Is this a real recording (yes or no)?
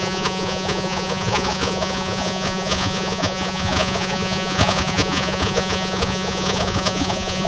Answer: no